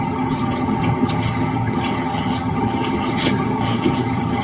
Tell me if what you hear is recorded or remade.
remade